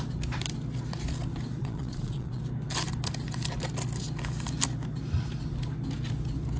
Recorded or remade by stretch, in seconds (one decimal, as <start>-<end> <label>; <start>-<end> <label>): 0.0-1.6 recorded; 1.6-2.4 remade; 2.4-6.6 recorded